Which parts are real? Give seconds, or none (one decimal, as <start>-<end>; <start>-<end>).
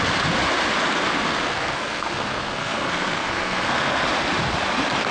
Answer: 0.0-1.0; 4.1-5.1